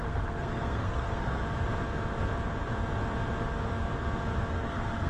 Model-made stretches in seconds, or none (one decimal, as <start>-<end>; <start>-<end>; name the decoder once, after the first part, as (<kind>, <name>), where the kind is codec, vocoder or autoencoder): 0.0-1.4 (codec, SNAC); 4.5-5.1